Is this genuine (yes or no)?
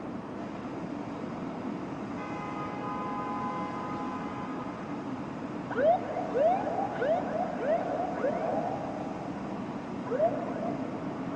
yes